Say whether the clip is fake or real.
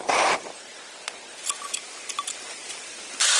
real